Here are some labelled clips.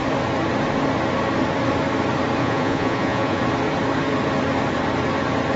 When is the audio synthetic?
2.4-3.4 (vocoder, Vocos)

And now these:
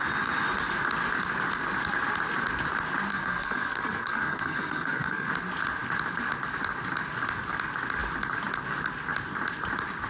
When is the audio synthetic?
3.1-5.3 (codec, SNAC)

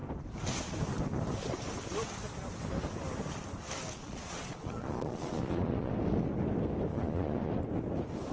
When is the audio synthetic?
4.0-5.9 (vocoder, Vocos); 6.9-7.5